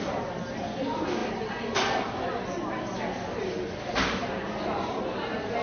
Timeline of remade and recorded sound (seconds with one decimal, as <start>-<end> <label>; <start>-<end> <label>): 0.0-5.6 recorded